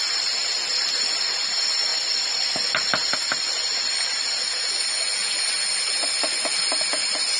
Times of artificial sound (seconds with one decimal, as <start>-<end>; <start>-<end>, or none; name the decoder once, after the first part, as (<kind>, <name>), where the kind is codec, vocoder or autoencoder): none